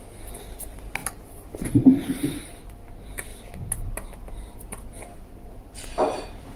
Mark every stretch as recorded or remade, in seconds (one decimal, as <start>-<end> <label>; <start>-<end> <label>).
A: 0.0-1.0 recorded; 1.0-2.6 remade; 2.6-6.6 recorded